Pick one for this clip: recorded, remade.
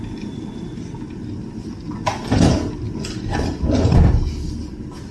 recorded